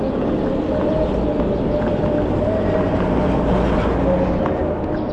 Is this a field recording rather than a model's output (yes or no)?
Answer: yes